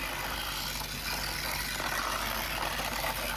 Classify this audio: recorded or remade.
recorded